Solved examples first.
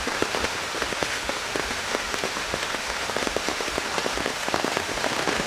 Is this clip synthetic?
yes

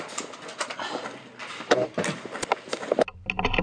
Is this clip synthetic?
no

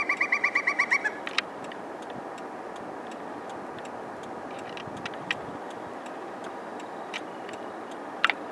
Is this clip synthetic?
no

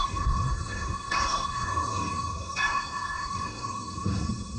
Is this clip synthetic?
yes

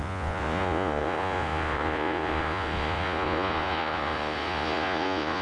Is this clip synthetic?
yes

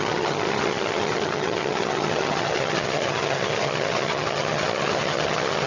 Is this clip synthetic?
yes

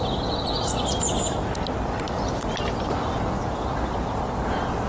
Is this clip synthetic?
no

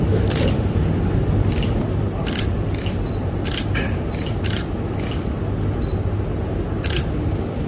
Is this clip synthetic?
no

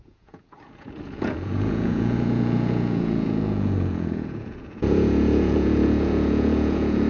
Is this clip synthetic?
yes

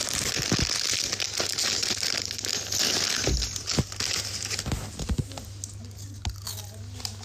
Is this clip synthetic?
no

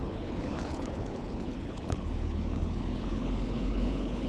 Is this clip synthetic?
yes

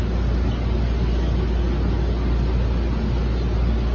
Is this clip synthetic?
no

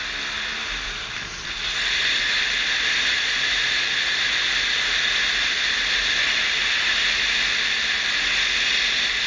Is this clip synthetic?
no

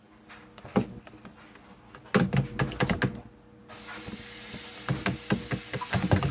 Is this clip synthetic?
no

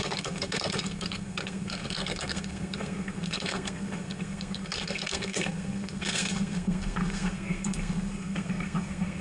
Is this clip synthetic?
yes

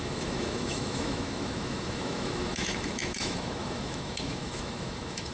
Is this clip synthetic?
yes